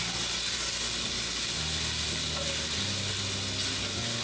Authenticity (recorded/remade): recorded